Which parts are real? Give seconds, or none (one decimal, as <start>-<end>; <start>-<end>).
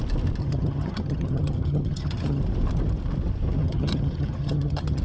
0.0-0.4; 2.4-3.6